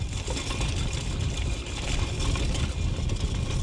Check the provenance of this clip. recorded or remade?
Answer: recorded